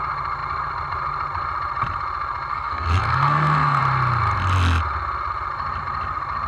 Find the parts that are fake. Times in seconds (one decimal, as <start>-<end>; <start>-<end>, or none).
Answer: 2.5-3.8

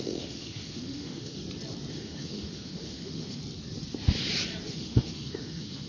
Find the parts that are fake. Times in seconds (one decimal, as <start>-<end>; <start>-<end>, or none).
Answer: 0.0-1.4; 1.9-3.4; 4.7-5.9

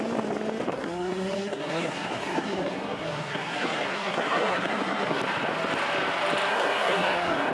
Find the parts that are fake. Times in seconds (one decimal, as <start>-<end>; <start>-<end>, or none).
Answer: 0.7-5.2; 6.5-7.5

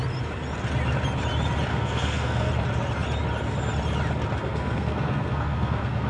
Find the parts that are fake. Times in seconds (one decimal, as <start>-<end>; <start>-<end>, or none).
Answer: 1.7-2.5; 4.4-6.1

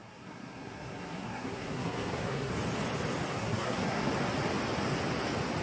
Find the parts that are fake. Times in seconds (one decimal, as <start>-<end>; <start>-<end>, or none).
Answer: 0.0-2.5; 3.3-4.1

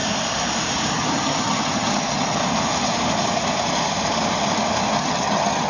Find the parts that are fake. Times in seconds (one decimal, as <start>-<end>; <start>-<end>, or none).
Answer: 0.9-2.4; 5.0-5.7